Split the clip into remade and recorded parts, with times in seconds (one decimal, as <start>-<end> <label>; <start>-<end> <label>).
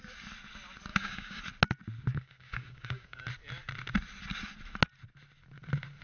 0.0-0.9 recorded; 0.9-1.4 remade; 1.4-2.1 recorded; 2.1-3.2 remade; 3.2-6.0 recorded